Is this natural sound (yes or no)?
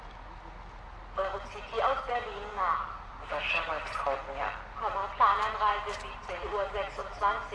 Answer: yes